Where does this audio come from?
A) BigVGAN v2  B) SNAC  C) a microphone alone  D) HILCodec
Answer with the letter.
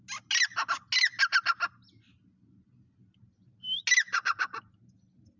C